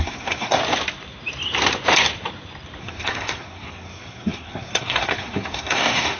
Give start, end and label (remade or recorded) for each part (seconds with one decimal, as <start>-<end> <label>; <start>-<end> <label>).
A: 0.0-0.6 remade; 0.6-2.8 recorded; 2.8-6.2 remade